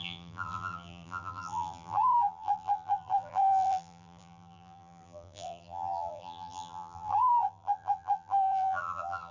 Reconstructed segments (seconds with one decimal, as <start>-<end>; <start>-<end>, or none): 0.0-9.3